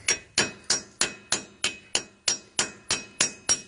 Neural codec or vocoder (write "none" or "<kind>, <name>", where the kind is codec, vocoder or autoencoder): none